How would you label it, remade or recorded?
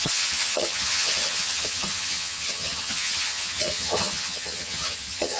remade